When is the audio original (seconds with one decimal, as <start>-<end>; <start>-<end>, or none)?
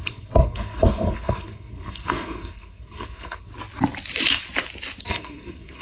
3.5-5.0